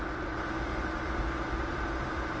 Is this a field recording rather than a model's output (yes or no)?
no